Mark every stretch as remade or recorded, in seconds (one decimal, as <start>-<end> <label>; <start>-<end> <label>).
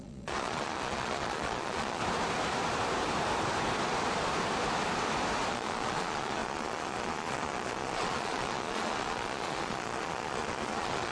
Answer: 0.0-2.0 remade; 2.0-5.5 recorded; 5.5-11.1 remade